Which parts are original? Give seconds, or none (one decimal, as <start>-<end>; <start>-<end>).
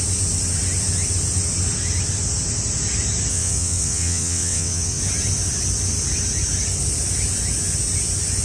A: 0.0-3.3; 5.0-8.4